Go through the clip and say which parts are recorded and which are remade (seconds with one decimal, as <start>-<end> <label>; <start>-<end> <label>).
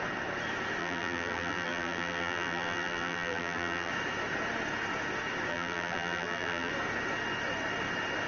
0.0-0.8 recorded; 0.8-3.9 remade; 3.9-5.5 recorded; 5.5-6.7 remade; 6.7-8.3 recorded